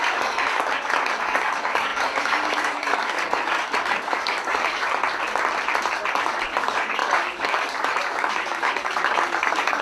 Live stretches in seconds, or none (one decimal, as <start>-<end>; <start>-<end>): 5.0-6.1